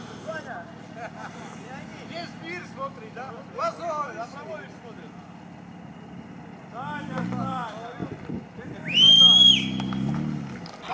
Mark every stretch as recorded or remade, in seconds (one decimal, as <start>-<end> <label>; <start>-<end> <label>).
0.0-10.9 recorded